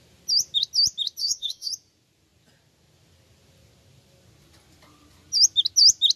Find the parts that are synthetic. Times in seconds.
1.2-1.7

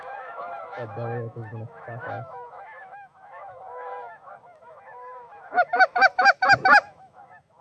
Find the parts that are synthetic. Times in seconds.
0.0-7.6

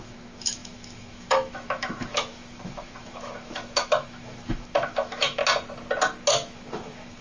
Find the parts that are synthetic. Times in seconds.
0.0-5.4; 6.3-7.2

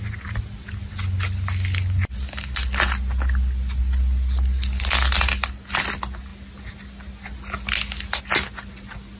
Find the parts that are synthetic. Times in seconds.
none

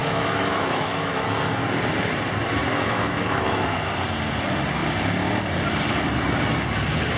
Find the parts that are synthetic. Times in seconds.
0.0-1.4; 2.6-3.9